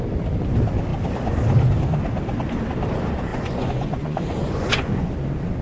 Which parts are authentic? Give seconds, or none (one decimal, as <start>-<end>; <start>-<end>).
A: 0.0-3.3; 5.1-5.6